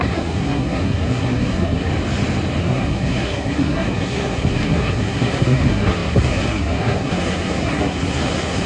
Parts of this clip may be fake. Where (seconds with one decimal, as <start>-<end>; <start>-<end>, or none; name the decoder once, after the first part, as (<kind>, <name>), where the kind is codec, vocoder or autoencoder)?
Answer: 0.0-1.9 (codec, SNAC); 2.6-8.7